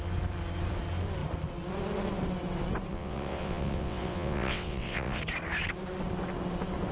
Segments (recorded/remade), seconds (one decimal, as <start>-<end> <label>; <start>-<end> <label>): 0.0-2.9 recorded; 2.9-5.2 remade; 5.2-6.9 recorded